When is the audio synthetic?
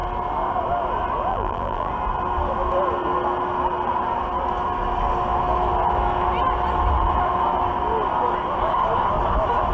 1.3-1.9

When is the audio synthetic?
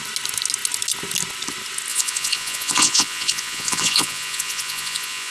1.9-5.3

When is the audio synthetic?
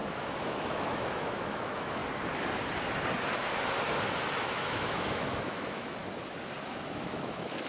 0.0-2.0; 4.4-6.0; 6.6-7.7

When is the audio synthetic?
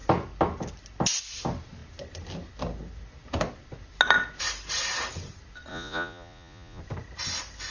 5.7-6.8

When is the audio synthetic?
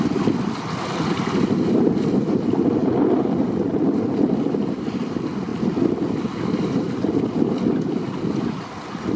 none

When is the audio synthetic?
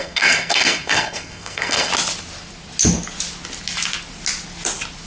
0.0-1.9